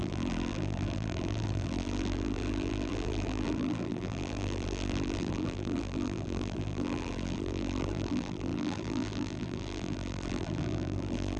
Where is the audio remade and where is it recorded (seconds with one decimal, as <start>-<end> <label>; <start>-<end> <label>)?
0.0-11.4 remade